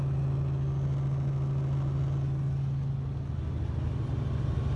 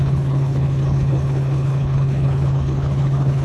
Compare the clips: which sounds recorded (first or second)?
first